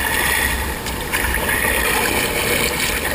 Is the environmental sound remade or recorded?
recorded